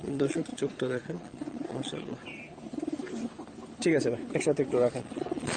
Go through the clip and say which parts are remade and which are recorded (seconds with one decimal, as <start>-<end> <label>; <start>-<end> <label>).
0.0-2.2 remade; 2.2-4.9 recorded; 4.9-5.6 remade